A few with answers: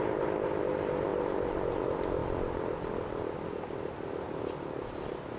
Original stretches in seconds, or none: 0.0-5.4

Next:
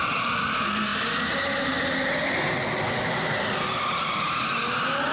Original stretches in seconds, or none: 0.0-5.1

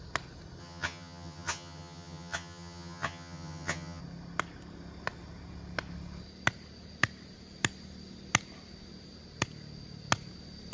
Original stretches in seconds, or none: 0.0-0.6; 4.0-10.7